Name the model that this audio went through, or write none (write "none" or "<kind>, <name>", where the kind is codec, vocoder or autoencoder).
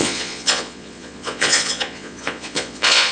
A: vocoder, Vocos